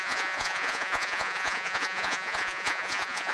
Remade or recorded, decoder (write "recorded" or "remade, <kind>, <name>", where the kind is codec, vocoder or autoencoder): remade, vocoder, Vocos